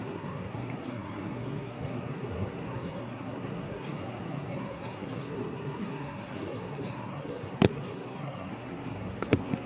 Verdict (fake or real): fake